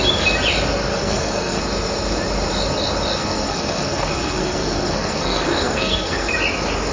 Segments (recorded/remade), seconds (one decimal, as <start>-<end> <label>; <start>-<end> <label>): 0.0-0.9 recorded; 0.9-1.6 remade; 1.6-3.2 recorded; 3.2-6.3 remade; 6.3-6.9 recorded